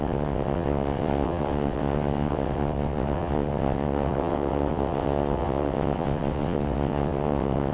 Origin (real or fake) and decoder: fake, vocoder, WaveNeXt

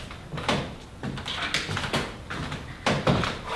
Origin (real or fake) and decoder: real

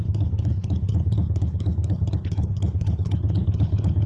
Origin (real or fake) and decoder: fake, codec, HILCodec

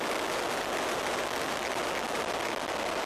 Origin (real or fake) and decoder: real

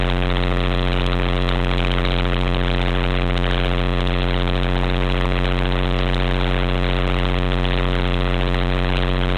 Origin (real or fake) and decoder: real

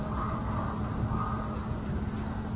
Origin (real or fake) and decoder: real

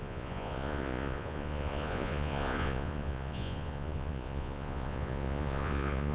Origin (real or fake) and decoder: fake, vocoder, Vocos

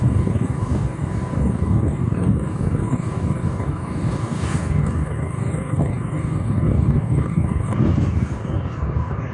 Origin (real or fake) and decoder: fake, codec, DAC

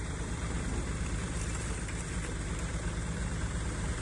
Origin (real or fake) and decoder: fake, vocoder, BigVGAN v2